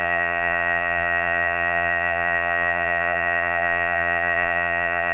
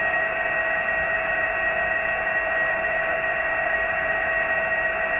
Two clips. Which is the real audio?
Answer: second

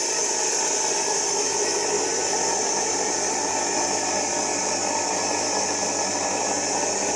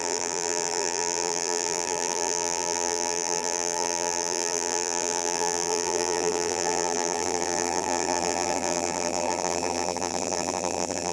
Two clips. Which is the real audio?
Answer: first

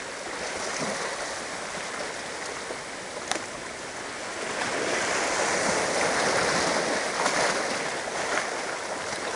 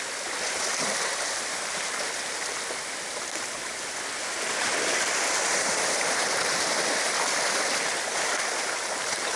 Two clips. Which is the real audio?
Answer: first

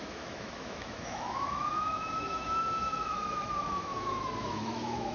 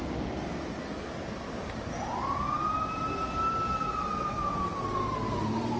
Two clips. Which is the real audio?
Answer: second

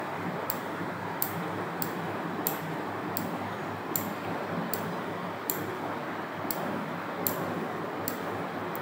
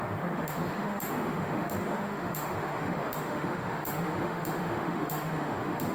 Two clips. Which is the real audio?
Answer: first